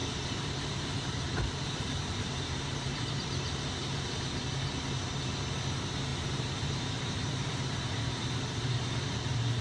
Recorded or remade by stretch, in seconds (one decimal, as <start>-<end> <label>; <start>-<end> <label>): 0.0-3.7 remade; 3.7-6.1 recorded; 6.1-8.4 remade; 8.4-9.6 recorded